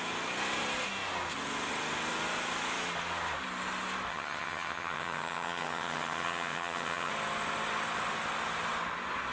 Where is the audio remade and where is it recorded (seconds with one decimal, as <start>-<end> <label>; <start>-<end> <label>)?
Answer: 0.0-4.1 recorded; 4.1-7.1 remade; 7.1-9.3 recorded